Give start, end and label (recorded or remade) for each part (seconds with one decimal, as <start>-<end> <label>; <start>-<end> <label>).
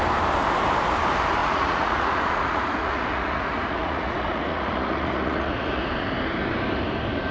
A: 0.0-1.4 recorded; 1.4-5.8 remade; 5.8-7.3 recorded